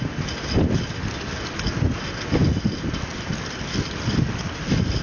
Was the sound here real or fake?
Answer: real